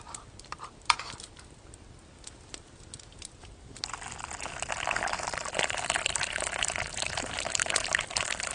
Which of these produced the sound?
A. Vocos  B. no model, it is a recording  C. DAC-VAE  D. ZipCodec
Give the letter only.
B